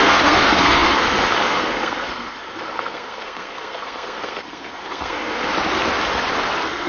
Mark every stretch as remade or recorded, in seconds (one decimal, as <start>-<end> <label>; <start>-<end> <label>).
0.0-5.5 remade; 5.5-6.5 recorded; 6.5-6.9 remade